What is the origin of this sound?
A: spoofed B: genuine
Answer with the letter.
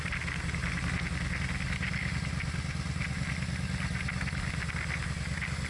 B